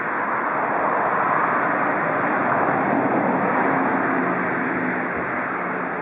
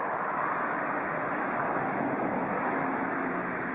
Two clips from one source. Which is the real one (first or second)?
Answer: first